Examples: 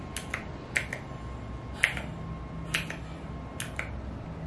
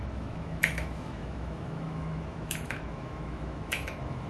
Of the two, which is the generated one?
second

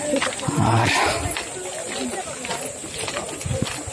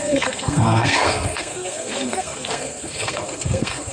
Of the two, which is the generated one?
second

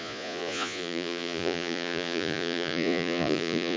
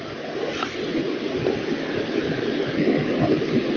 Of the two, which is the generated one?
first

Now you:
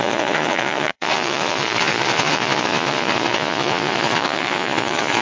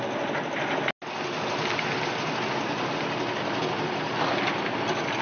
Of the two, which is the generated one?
first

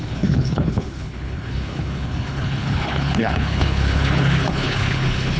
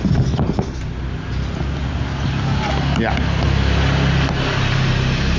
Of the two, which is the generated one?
first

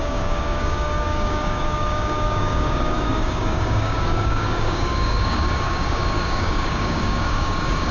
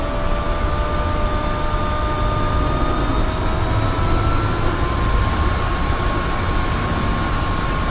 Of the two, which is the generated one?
first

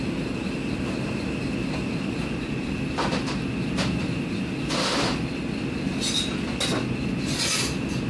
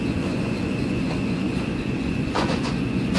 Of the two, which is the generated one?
second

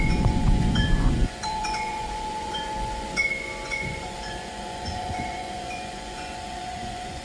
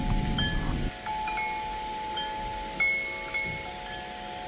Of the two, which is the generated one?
first